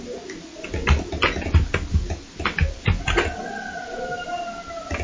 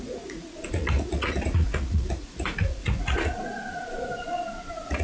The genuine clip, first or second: first